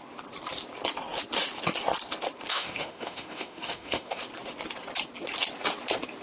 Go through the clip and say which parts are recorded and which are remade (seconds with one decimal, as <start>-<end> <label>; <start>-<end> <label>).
0.0-2.5 recorded; 2.5-4.2 remade; 4.2-6.2 recorded